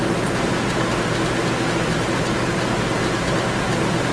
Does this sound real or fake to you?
real